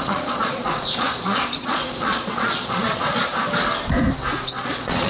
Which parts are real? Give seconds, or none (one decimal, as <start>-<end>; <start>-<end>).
3.3-4.6